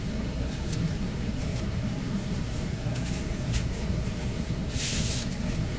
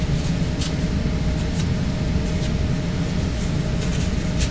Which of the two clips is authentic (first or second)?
second